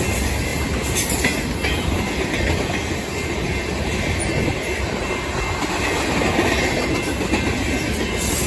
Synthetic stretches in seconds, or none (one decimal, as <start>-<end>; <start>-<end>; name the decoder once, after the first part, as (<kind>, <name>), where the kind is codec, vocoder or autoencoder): none

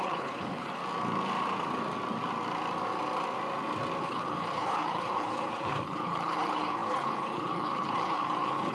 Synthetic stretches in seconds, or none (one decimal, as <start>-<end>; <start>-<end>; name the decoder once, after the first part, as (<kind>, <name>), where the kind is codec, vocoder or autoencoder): 0.0-0.8 (codec, HILCodec); 4.0-8.7

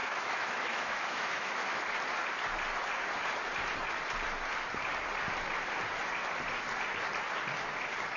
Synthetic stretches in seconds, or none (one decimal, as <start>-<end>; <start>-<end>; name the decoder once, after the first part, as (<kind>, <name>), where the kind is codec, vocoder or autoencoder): 0.0-1.8 (autoencoder, DAC-VAE)

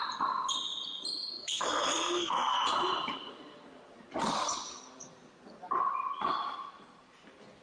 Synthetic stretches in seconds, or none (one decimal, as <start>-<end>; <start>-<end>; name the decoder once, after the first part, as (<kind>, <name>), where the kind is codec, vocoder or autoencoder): 1.4-2.6 (codec, SNAC)